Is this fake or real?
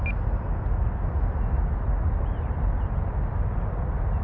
real